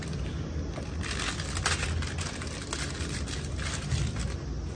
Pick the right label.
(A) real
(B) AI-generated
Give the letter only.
A